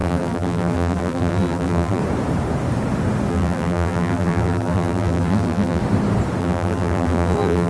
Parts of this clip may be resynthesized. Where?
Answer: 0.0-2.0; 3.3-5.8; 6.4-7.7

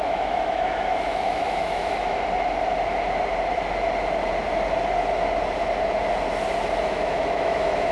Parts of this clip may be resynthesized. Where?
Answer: 0.0-2.1; 6.8-7.9

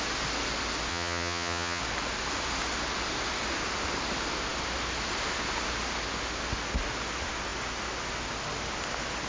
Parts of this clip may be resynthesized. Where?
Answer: 0.9-1.8

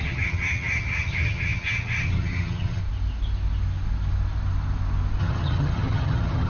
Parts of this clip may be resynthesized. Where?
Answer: 0.0-2.8; 5.2-6.5

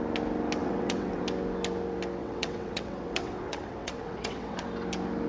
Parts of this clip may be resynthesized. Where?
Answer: 0.6-1.2; 2.2-4.6

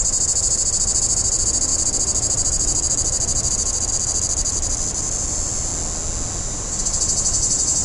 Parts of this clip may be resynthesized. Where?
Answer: 0.0-5.7; 6.4-7.8